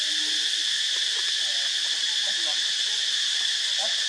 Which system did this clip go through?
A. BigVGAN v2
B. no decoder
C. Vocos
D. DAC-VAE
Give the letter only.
B